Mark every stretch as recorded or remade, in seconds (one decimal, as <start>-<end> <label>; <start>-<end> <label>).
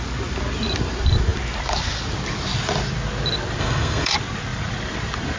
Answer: 0.0-3.6 recorded; 3.6-4.1 remade; 4.1-5.4 recorded